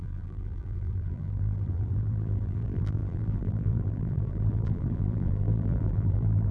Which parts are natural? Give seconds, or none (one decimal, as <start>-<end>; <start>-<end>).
none